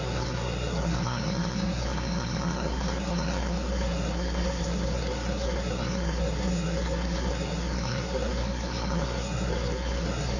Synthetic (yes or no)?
yes